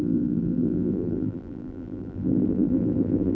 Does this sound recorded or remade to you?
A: remade